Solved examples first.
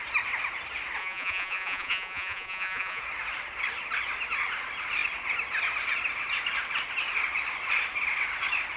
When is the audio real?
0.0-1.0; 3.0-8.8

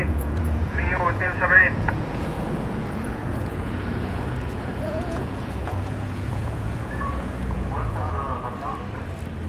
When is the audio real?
8.3-9.5

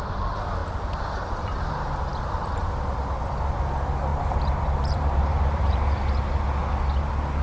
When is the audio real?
0.0-0.6; 1.6-4.1; 6.0-7.4

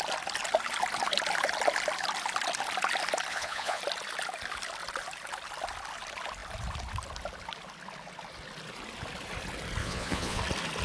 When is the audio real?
0.0-3.3; 3.8-9.8; 10.4-10.8